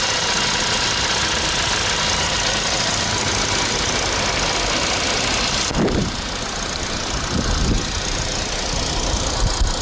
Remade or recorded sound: recorded